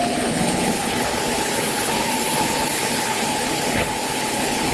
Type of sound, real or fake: fake